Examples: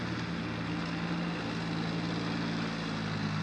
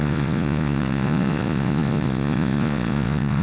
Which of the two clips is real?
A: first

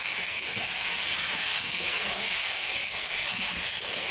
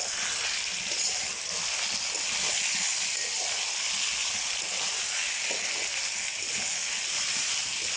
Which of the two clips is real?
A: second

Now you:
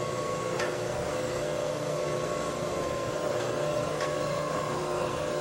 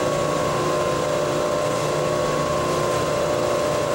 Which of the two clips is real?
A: second